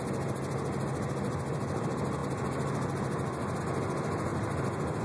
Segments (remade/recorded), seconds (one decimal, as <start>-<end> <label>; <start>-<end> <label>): 0.0-2.2 recorded; 2.2-3.6 remade; 3.6-4.3 recorded; 4.3-5.0 remade

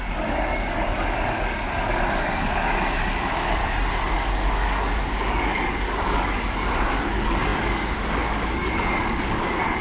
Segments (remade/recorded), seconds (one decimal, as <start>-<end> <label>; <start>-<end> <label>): 0.0-3.6 remade; 3.6-4.1 recorded; 4.1-9.8 remade

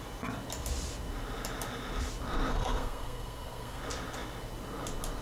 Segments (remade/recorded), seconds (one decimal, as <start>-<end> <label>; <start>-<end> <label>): 0.0-2.5 recorded; 2.5-3.8 remade; 3.8-5.2 recorded

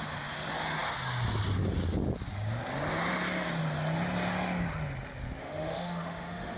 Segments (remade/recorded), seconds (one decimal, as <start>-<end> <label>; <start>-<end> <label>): 0.0-5.4 recorded; 5.4-6.6 remade

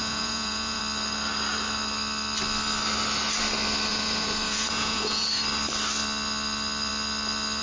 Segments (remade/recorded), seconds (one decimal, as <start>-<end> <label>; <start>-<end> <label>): 0.0-0.8 remade; 0.8-3.9 recorded; 3.9-5.3 remade; 5.3-7.6 recorded

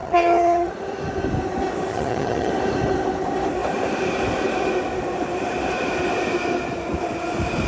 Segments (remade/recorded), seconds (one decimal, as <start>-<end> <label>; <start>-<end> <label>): 0.0-0.7 remade; 0.7-1.9 recorded; 1.9-2.5 remade; 2.5-7.7 recorded